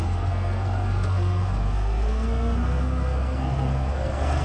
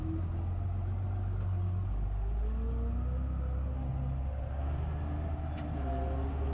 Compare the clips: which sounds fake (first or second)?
first